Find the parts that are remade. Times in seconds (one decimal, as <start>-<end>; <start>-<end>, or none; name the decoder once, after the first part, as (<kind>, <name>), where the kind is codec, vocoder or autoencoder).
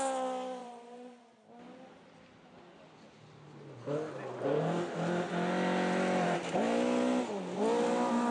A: 0.6-1.2 (vocoder, BigVGAN v2)